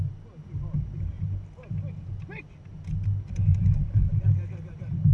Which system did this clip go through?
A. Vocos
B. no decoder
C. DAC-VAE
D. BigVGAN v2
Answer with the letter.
B